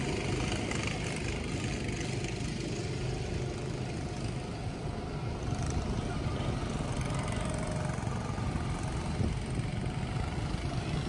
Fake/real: real